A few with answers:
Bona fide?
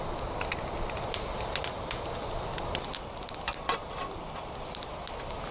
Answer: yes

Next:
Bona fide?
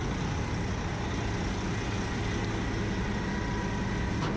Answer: yes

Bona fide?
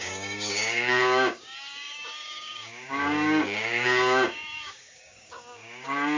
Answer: no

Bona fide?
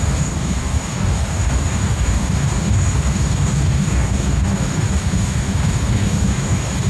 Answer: no